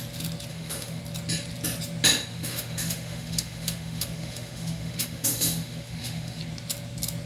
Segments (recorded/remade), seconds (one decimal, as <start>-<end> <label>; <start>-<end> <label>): 0.0-0.5 recorded; 0.5-1.0 remade; 1.0-2.3 recorded; 2.3-6.4 remade; 6.4-7.3 recorded